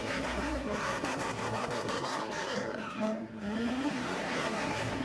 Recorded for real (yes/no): no